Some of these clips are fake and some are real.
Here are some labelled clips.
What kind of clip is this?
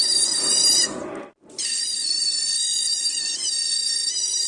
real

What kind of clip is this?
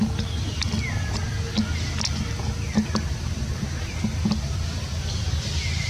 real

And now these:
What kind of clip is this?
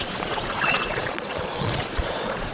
fake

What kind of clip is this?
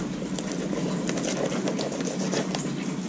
real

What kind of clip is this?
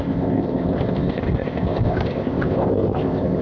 fake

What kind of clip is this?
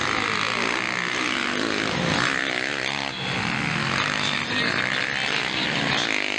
real